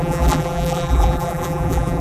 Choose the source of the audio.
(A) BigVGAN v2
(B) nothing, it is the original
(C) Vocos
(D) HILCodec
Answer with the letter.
A